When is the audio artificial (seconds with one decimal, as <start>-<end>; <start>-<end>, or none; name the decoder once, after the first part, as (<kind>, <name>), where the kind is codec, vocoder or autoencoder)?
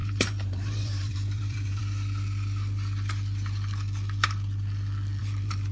0.0-1.8 (vocoder, BigVGAN v2); 5.2-5.7